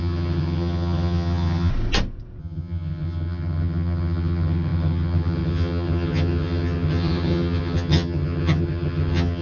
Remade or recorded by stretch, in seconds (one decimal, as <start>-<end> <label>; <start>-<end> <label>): 0.0-1.7 remade; 1.7-2.4 recorded; 2.4-9.4 remade